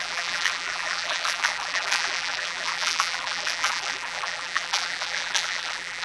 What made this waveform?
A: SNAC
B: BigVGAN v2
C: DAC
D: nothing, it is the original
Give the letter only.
B